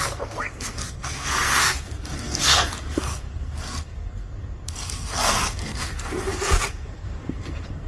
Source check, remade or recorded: remade